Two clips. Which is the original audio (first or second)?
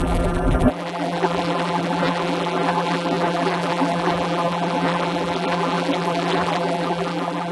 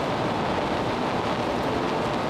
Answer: second